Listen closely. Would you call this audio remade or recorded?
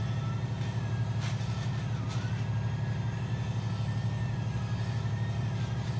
recorded